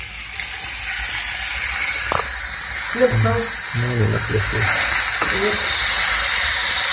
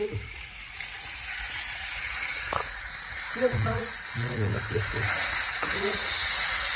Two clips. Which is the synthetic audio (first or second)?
second